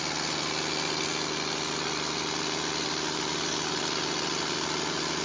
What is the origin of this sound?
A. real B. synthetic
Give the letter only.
A